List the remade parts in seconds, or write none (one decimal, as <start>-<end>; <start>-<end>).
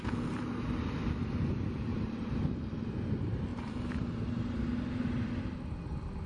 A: 1.9-2.4; 3.5-5.4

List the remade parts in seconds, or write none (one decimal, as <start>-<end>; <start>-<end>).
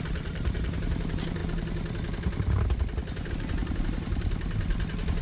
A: 0.0-1.4; 3.3-5.2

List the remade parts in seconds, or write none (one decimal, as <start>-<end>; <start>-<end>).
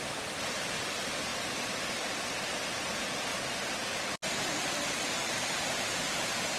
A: 1.3-2.3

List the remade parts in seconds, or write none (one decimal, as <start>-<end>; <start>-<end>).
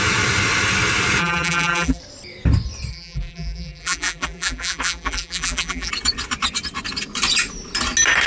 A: 1.2-2.0; 2.9-5.9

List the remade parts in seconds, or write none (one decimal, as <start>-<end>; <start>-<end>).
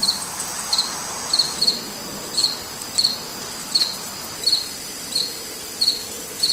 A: 3.3-5.2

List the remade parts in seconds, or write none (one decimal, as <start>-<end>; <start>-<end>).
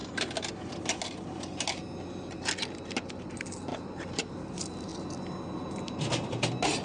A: 0.0-0.5; 3.7-4.3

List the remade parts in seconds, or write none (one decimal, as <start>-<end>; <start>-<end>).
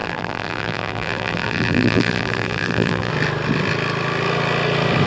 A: 0.0-3.1